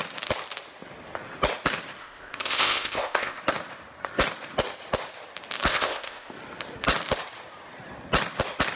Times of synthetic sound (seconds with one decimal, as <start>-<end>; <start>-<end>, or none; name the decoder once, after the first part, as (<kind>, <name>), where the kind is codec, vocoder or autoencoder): 2.0-3.4 (codec, ZipCodec); 5.7-6.3